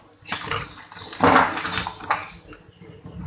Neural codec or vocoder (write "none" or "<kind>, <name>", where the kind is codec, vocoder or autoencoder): none